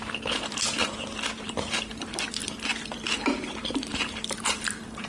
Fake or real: fake